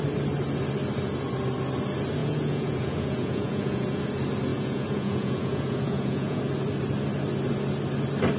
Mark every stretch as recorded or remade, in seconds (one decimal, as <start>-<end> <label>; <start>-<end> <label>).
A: 0.0-2.2 recorded; 2.2-4.0 remade; 4.0-4.5 recorded; 4.5-6.4 remade; 6.4-8.4 recorded